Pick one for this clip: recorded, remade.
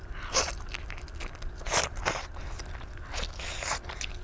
recorded